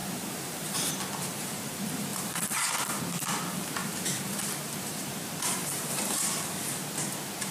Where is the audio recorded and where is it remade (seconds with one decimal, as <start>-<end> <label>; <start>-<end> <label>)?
0.0-0.9 remade; 0.9-2.1 recorded; 2.1-3.0 remade; 3.0-3.8 recorded; 3.8-5.9 remade; 5.9-7.5 recorded